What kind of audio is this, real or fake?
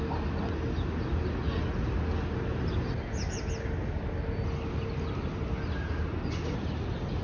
real